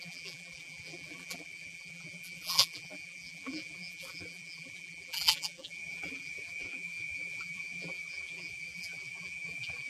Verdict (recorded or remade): remade